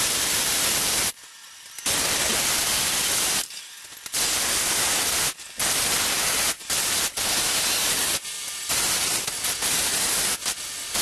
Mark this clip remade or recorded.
recorded